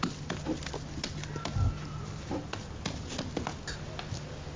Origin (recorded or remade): recorded